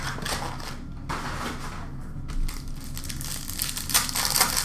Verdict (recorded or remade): recorded